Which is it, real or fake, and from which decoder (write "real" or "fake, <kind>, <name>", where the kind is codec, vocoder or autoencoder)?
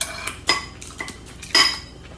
real